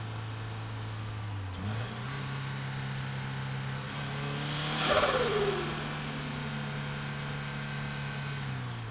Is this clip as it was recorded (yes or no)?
yes